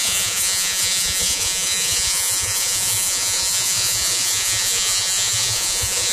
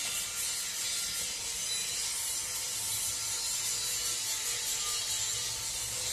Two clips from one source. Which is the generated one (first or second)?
first